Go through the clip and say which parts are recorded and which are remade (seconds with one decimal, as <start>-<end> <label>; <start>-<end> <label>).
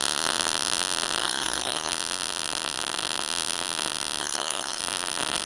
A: 0.0-1.2 recorded; 1.2-1.9 remade; 1.9-4.2 recorded; 4.2-4.8 remade; 4.8-5.5 recorded